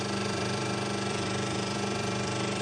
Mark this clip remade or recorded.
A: remade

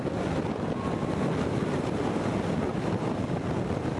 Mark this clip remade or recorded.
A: recorded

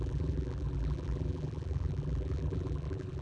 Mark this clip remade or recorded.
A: remade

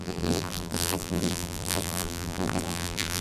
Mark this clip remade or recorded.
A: remade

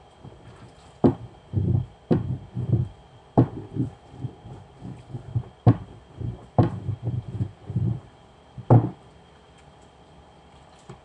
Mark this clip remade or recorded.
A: remade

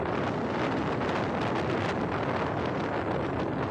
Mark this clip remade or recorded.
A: recorded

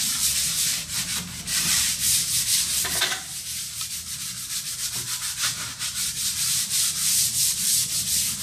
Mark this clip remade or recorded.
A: remade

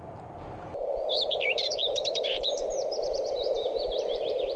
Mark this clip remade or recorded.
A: remade